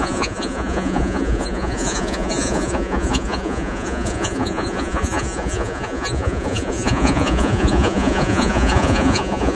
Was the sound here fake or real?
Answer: fake